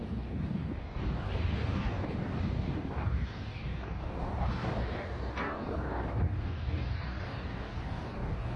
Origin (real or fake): fake